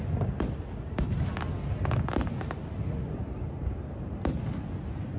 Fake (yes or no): no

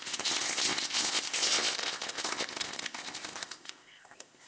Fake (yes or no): yes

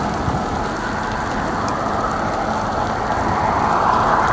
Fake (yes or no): no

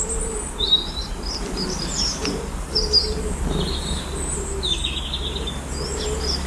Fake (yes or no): no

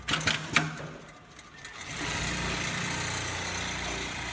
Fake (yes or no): no